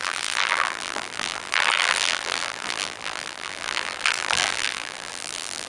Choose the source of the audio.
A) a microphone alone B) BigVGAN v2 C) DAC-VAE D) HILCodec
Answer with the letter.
B